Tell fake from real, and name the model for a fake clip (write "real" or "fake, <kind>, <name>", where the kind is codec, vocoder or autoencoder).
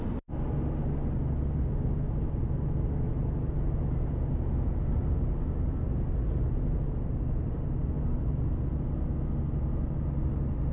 real